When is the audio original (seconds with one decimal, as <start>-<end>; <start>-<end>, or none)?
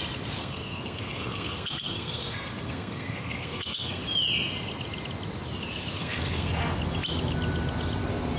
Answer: 0.0-0.4; 4.0-6.0; 6.5-8.4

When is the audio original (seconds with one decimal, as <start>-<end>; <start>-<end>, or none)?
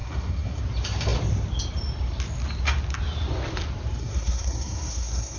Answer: 0.6-4.0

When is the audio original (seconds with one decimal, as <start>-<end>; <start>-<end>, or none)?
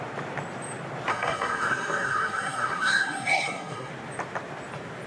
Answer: 0.0-1.1; 3.9-5.1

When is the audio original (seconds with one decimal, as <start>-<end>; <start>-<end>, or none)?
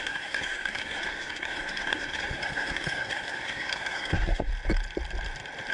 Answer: 4.5-5.7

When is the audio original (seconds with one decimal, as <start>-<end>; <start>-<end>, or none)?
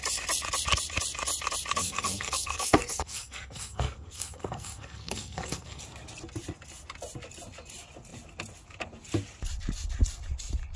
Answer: 0.0-1.8; 5.8-10.8